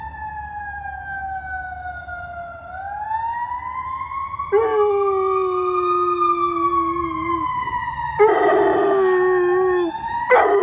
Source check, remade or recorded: recorded